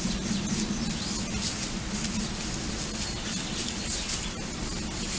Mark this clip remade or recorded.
recorded